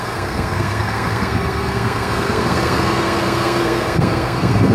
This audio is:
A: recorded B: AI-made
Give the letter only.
B